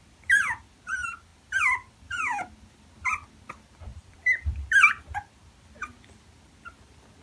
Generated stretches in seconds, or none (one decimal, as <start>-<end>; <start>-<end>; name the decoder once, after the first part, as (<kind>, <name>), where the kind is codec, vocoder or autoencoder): 1.3-2.4 (vocoder, BigVGAN v2); 3.9-4.7